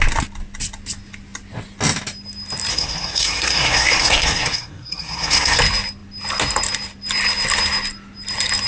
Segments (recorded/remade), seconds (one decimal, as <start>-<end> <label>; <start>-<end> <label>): 0.0-2.7 recorded; 2.7-5.6 remade; 5.6-8.7 recorded